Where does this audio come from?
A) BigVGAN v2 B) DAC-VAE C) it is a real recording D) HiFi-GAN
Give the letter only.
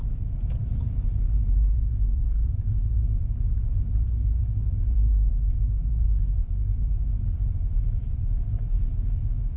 A